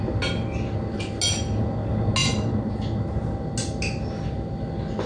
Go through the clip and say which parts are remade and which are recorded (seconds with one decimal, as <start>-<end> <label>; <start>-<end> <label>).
0.0-5.1 recorded